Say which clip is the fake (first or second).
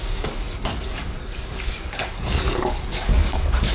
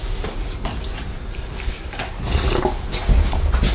first